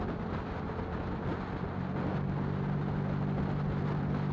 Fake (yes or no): no